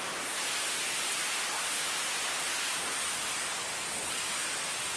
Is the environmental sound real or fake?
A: real